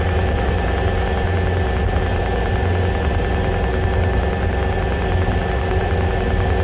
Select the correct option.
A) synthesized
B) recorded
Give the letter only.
B